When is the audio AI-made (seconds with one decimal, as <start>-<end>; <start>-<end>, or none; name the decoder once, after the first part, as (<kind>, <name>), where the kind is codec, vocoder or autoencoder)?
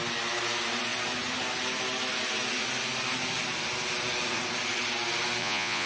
5.4-5.9 (vocoder, Vocos)